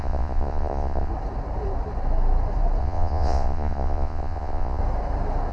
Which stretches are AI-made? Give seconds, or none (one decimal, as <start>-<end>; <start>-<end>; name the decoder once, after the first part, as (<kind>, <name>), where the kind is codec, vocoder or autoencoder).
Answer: 0.0-1.1 (vocoder, Vocos); 2.8-4.8